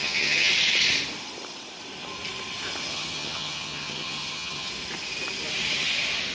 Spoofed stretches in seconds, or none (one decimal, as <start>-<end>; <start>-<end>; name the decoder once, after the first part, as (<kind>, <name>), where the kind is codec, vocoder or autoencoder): 0.0-0.5 (vocoder, HiFi-GAN); 2.9-4.7